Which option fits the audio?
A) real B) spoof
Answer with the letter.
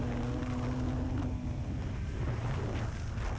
A